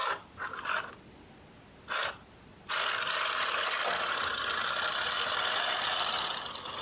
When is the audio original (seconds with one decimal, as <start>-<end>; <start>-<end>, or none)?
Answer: 0.0-6.8